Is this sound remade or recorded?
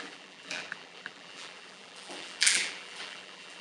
remade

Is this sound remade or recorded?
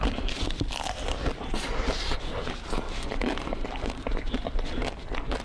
remade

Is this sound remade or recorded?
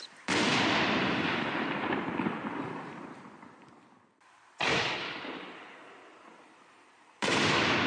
remade